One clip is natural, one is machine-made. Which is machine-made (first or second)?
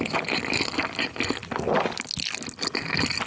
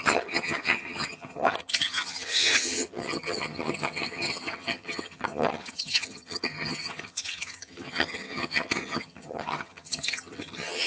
second